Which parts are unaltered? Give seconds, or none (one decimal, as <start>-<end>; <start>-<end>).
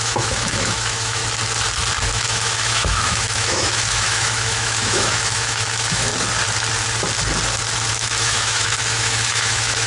1.2-2.1; 6.1-7.9